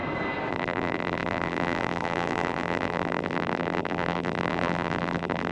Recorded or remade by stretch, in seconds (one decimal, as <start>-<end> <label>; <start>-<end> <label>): 0.0-0.5 recorded; 0.5-5.5 remade